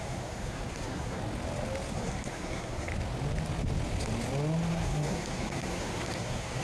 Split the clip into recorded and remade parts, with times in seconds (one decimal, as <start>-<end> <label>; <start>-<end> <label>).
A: 0.0-1.2 remade; 1.2-1.9 recorded; 1.9-2.9 remade; 2.9-4.7 recorded; 4.7-6.6 remade